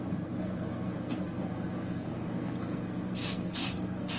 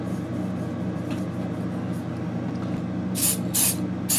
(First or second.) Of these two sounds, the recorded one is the second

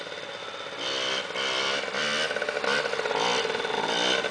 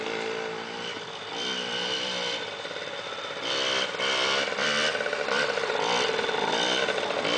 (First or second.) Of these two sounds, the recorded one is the first